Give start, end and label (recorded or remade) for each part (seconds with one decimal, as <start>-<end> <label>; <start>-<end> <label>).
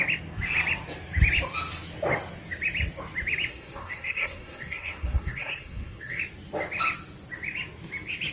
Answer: 0.0-3.5 recorded; 3.5-6.2 remade; 6.2-8.3 recorded